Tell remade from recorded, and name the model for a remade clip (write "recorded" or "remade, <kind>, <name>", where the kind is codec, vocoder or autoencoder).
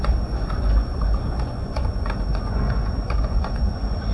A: remade, vocoder, Vocos